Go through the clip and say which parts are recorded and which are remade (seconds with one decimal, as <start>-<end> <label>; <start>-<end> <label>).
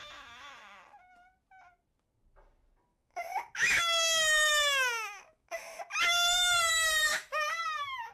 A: 0.0-2.9 recorded; 2.9-5.8 remade; 5.8-7.1 recorded; 7.1-8.1 remade